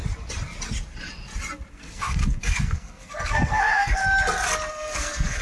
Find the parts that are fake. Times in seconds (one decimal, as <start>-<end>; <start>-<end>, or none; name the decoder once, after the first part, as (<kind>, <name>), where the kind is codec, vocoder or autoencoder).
1.7-4.0 (codec, SNAC); 4.7-5.4